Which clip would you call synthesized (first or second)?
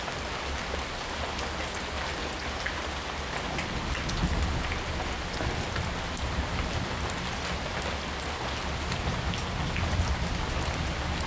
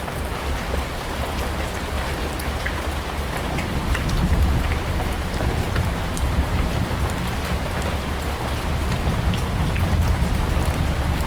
second